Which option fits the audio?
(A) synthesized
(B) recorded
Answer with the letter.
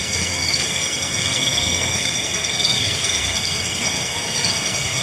A